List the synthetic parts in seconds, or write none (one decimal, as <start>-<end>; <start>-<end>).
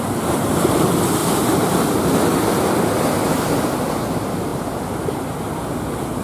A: none